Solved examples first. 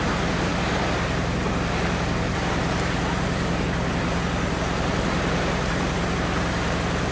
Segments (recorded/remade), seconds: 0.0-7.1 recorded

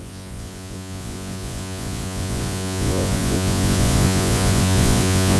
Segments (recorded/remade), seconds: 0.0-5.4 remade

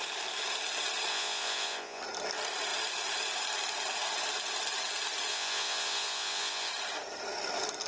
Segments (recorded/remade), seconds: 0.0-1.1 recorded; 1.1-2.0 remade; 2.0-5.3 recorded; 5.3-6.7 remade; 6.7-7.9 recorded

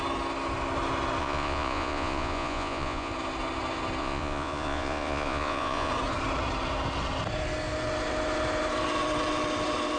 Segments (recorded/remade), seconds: 0.0-1.2 recorded; 1.2-3.1 remade; 3.1-4.0 recorded; 4.0-5.9 remade; 5.9-10.0 recorded

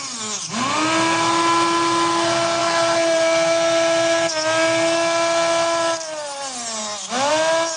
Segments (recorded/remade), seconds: 0.0-7.8 recorded